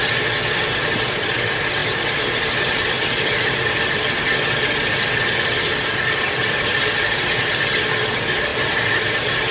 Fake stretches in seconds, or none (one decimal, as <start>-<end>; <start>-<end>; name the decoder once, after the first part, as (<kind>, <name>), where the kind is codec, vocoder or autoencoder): 1.8-2.6 (vocoder, BigVGAN v2); 8.5-9.5